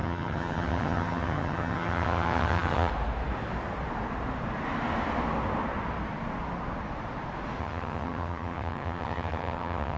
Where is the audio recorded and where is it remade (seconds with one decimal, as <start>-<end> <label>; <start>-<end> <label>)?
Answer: 0.0-2.9 remade; 2.9-7.6 recorded; 7.6-10.0 remade